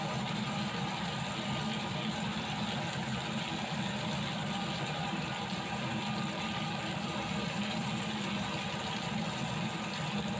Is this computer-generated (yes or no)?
no